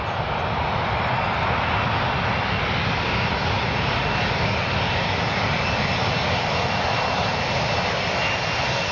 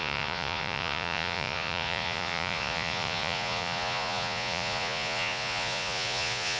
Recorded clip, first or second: first